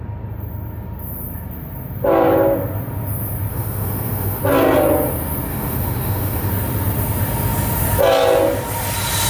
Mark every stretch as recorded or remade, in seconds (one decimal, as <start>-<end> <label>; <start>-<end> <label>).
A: 0.0-3.5 recorded; 3.5-4.4 remade; 4.4-5.5 recorded; 5.5-6.5 remade; 6.5-9.3 recorded